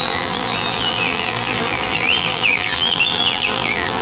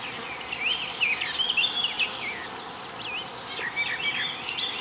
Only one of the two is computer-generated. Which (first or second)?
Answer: first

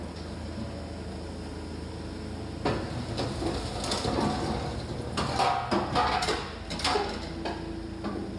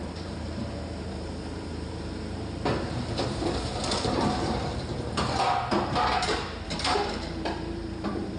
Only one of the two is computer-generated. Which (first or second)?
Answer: second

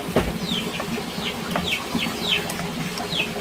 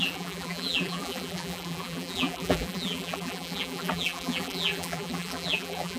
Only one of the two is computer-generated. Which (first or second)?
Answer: second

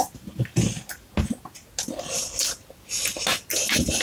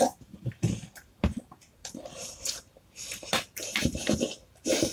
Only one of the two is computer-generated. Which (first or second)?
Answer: second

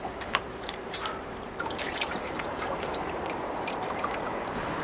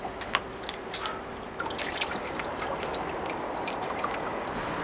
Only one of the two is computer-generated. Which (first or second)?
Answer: first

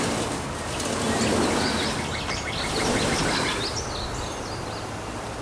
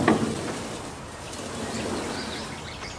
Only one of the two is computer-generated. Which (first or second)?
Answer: second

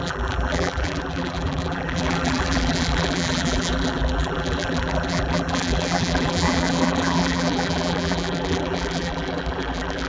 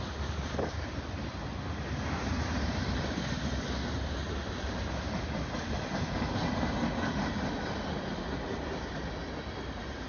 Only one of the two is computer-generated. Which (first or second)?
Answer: first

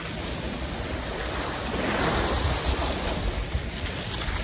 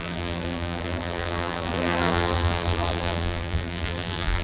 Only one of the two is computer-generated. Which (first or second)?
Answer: second